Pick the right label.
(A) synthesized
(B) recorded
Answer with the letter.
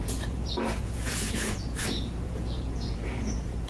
A